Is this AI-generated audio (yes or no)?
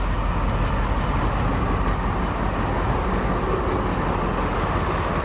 no